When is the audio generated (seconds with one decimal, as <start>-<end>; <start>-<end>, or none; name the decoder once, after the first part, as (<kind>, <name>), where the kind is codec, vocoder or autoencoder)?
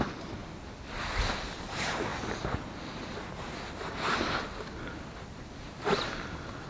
none